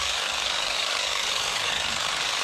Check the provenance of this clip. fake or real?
fake